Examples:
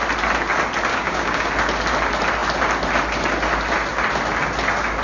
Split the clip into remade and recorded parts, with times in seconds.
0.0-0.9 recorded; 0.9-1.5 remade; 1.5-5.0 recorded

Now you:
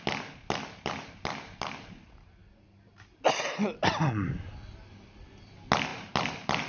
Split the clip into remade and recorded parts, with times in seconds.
0.0-6.7 recorded